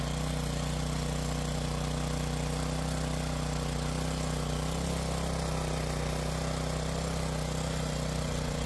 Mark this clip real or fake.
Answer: real